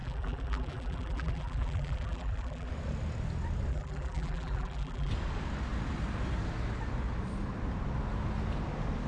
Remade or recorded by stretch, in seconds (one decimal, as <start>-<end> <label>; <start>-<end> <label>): 0.0-2.7 remade; 2.7-3.7 recorded; 3.7-5.1 remade; 5.1-9.1 recorded